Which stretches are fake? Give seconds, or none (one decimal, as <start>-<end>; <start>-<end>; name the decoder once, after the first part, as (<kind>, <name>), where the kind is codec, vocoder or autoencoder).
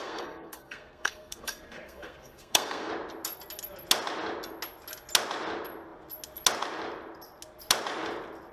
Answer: 0.0-2.9 (codec, SNAC)